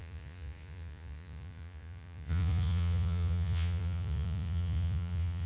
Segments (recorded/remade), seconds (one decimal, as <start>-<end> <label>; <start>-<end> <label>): 0.0-5.5 remade